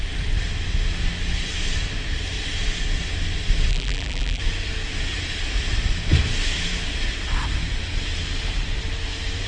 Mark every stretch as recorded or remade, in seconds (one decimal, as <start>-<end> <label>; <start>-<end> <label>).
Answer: 0.0-3.7 recorded; 3.7-4.4 remade; 4.4-9.5 recorded